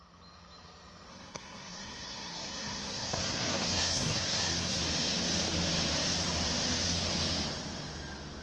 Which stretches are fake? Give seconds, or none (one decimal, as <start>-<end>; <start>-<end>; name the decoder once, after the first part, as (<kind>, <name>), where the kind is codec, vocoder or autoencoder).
1.1-4.8 (codec, SNAC)